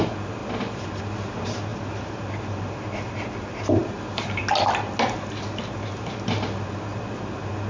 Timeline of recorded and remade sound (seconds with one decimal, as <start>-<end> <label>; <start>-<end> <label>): 0.0-7.7 recorded